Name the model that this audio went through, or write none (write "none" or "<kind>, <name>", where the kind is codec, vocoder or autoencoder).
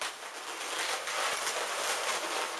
none